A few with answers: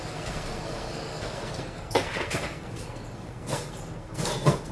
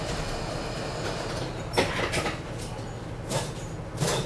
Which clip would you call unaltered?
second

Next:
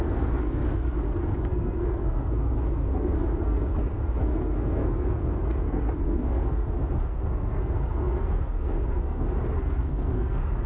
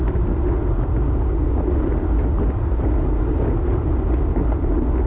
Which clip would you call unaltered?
second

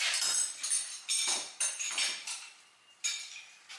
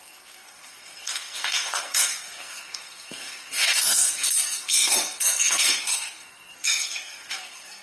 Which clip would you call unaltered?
first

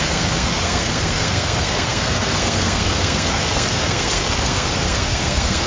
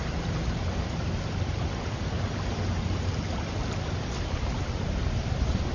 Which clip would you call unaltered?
second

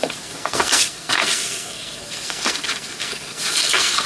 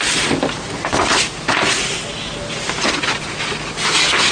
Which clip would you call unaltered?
second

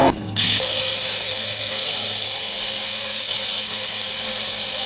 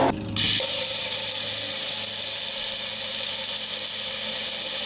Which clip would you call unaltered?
second